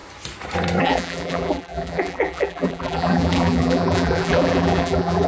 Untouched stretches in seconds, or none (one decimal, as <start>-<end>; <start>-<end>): 0.0-0.8